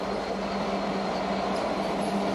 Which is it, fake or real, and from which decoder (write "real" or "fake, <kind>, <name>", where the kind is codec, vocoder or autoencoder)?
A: real